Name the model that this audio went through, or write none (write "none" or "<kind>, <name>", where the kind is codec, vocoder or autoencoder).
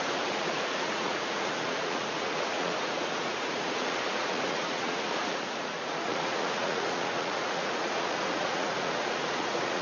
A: vocoder, Vocos